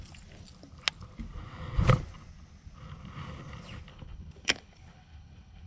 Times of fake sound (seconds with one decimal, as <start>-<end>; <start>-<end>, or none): 3.9-5.7